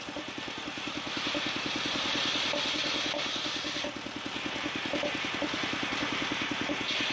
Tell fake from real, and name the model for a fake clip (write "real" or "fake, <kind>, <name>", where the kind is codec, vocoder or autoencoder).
real